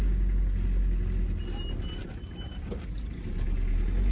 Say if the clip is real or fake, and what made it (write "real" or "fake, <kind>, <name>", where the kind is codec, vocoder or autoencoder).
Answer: real